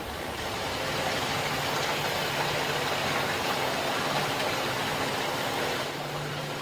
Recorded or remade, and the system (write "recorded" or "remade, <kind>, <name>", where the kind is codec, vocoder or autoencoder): recorded